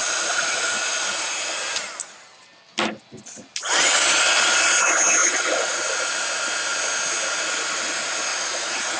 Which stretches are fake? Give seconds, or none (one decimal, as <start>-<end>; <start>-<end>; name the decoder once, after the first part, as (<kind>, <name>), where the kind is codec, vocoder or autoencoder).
0.0-1.3 (vocoder, Vocos); 5.2-5.9; 8.3-9.0